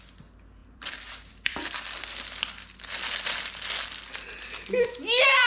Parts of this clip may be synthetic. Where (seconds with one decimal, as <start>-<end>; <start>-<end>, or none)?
0.6-1.6